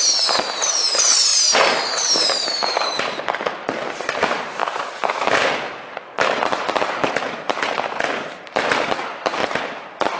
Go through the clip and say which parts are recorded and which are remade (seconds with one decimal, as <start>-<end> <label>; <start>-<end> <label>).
0.0-4.6 remade; 4.6-5.3 recorded; 5.3-10.2 remade